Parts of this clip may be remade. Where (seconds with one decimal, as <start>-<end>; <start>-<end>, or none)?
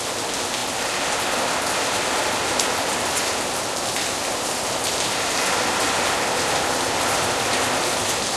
none